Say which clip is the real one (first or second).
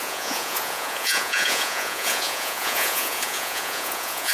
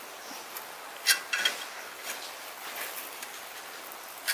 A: second